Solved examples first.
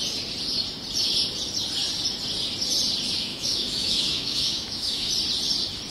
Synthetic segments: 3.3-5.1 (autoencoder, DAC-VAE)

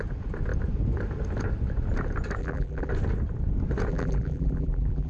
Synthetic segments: 2.4-2.9 (vocoder, BigVGAN v2); 3.9-5.1

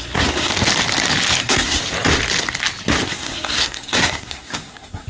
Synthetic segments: 0.0-0.5 (codec, SNAC); 1.4-1.8; 3.1-5.1